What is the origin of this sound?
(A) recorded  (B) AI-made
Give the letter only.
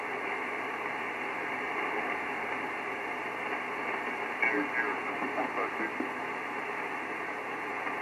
A